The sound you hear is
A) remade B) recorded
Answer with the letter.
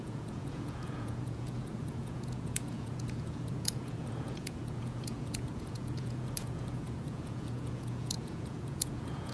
A